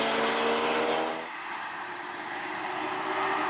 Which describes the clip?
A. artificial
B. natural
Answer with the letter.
B